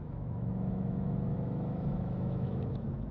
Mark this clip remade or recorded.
remade